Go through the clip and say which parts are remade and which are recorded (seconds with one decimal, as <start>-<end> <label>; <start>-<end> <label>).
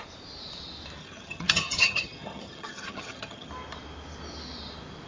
0.0-1.0 recorded; 1.0-3.5 remade; 3.5-5.1 recorded